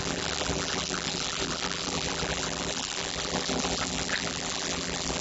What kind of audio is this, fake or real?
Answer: fake